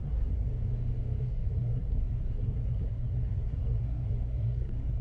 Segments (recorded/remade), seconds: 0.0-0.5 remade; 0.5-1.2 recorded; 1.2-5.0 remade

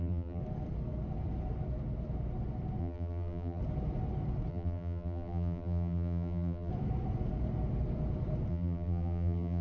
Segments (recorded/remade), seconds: 0.0-0.4 remade; 0.4-2.8 recorded; 2.8-3.6 remade; 3.6-4.5 recorded; 4.5-6.7 remade; 6.7-8.5 recorded; 8.5-9.6 remade

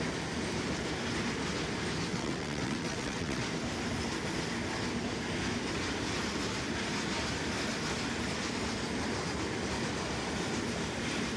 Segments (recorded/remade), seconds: 0.0-2.1 recorded; 2.1-3.4 remade; 3.4-11.4 recorded